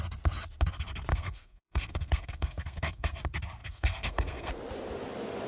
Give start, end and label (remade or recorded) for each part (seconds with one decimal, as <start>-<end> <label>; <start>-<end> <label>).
0.0-1.1 recorded; 1.1-3.2 remade; 3.2-3.6 recorded; 3.6-4.5 remade; 4.5-5.5 recorded